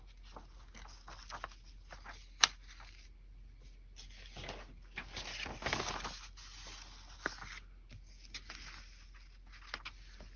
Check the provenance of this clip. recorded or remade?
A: recorded